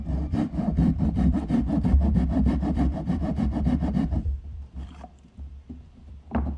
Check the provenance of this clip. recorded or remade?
remade